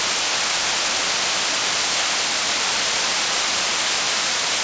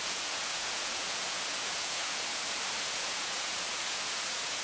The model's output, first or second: second